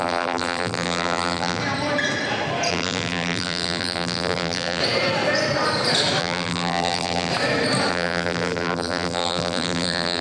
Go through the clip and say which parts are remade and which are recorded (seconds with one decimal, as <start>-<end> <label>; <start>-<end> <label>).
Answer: 0.0-1.6 remade; 1.6-2.7 recorded; 2.7-4.8 remade; 4.8-6.2 recorded; 6.2-7.3 remade; 7.3-7.9 recorded; 7.9-10.2 remade

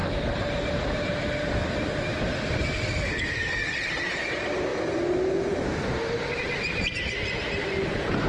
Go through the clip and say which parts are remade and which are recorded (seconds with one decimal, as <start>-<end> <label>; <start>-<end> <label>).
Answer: 0.0-8.3 recorded

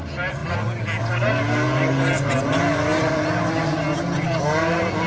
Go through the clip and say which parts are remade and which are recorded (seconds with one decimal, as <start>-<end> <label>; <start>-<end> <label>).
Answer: 0.0-5.1 recorded

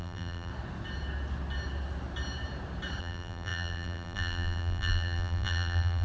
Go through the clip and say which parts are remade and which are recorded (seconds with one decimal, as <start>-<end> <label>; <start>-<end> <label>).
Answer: 0.0-0.5 remade; 0.5-3.0 recorded; 3.0-6.0 remade

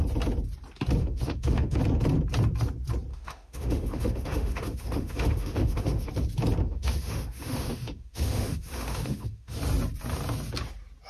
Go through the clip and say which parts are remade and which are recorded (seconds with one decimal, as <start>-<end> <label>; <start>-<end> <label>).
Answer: 0.0-1.0 recorded; 1.0-1.8 remade; 1.8-3.1 recorded; 3.1-6.1 remade; 6.1-6.6 recorded; 6.6-9.6 remade; 9.6-11.1 recorded